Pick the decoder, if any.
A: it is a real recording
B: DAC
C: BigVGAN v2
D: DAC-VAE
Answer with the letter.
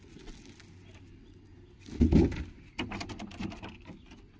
A